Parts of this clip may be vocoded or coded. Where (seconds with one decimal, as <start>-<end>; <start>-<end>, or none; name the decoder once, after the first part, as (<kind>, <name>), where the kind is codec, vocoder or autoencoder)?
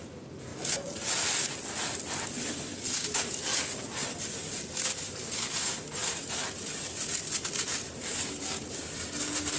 none